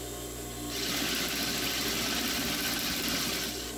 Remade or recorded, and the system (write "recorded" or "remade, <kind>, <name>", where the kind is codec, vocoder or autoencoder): recorded